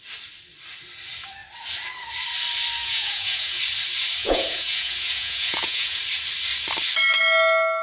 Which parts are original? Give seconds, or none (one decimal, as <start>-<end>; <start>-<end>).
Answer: 0.0-2.8; 3.6-4.2; 6.0-7.8